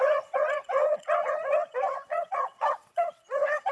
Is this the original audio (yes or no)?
no